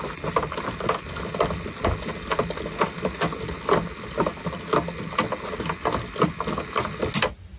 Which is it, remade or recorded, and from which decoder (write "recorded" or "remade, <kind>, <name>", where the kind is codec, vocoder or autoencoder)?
recorded